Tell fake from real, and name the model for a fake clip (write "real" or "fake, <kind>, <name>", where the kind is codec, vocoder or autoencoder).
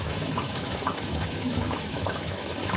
fake, autoencoder, DAC-VAE